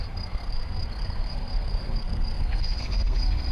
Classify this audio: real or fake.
fake